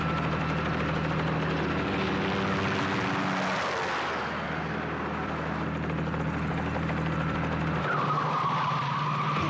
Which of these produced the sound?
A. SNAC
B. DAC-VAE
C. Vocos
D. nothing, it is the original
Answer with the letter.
D